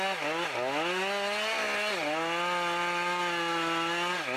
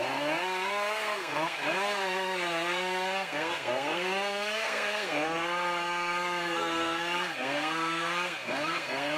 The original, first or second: first